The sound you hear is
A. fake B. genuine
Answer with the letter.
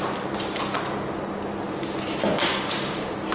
B